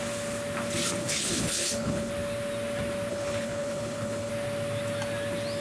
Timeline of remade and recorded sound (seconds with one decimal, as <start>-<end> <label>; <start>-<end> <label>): 0.0-1.0 recorded; 1.0-2.1 remade; 2.1-3.1 recorded; 3.1-4.3 remade; 4.3-5.6 recorded